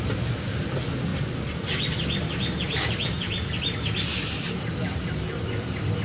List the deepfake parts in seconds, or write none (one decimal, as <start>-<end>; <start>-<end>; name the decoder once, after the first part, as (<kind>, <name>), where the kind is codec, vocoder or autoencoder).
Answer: 0.0-1.1 (vocoder, BigVGAN v2); 4.7-6.0